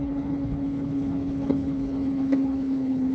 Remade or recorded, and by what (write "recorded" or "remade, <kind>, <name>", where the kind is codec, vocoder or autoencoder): remade, codec, HILCodec